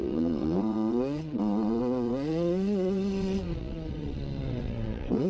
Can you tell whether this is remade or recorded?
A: remade